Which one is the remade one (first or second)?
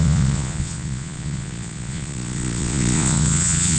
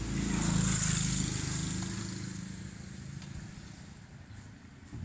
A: first